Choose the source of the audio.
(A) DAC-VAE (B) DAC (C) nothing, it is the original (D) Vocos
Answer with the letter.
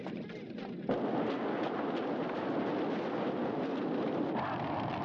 C